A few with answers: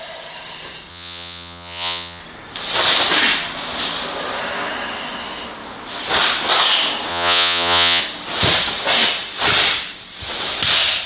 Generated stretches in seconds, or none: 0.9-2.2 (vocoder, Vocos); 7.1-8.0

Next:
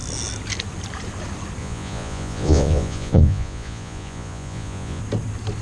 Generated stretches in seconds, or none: 1.6-5.0 (vocoder, Vocos)